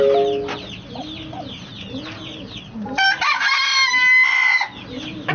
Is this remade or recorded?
recorded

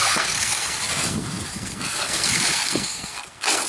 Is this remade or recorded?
remade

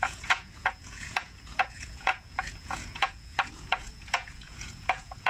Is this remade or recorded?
remade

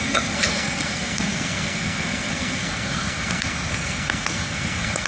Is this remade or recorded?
remade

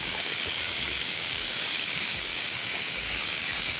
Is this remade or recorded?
remade